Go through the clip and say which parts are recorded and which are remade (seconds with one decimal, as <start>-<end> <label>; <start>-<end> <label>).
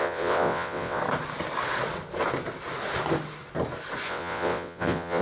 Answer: 0.0-1.0 remade; 1.0-4.1 recorded; 4.1-5.2 remade